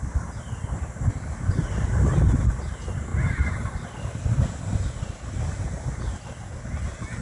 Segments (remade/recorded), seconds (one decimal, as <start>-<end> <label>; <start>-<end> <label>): 0.0-7.2 recorded